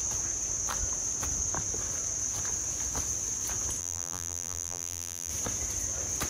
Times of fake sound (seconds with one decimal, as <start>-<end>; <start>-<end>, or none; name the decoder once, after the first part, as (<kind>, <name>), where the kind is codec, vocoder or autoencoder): 3.8-5.3 (vocoder, BigVGAN v2)